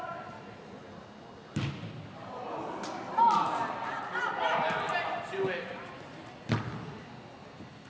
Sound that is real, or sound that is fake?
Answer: real